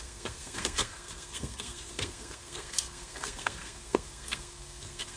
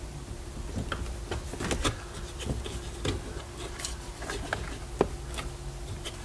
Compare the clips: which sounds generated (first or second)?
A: first